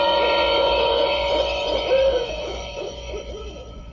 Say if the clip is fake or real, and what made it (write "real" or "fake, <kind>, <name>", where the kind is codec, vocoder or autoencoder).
fake, vocoder, Vocos